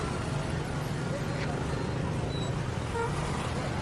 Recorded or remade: recorded